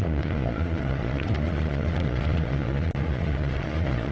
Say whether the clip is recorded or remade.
remade